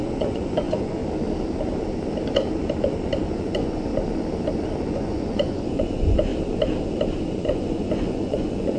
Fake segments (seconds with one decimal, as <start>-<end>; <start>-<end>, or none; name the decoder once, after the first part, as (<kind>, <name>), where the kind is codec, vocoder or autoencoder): 0.0-1.0 (vocoder, Vocos); 3.3-3.9; 4.9-6.3; 7.3-8.8

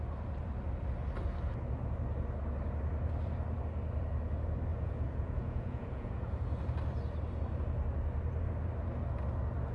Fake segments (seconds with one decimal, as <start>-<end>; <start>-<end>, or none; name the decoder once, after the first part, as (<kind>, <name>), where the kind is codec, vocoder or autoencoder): 4.7-6.6 (vocoder, Vocos)

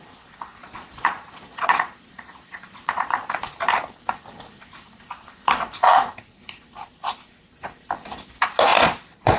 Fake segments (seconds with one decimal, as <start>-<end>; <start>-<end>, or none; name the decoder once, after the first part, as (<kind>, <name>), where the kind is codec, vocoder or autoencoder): 0.6-3.4 (vocoder, Vocos); 8.7-9.4

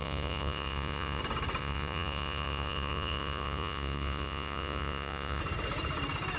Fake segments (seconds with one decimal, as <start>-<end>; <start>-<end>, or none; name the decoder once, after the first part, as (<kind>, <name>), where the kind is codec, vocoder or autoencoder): 0.0-1.2 (vocoder, Vocos); 1.6-5.4

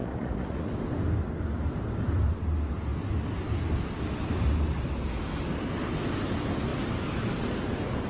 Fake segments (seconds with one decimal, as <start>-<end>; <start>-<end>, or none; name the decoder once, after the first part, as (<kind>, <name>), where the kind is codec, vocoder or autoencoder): 0.0-0.7 (vocoder, Vocos)